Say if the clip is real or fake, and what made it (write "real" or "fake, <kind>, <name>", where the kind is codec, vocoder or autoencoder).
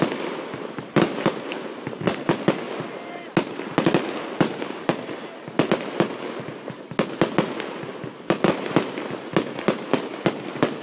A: real